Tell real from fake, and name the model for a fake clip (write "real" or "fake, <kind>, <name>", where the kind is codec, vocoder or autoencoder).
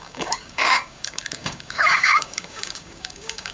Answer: fake, codec, DAC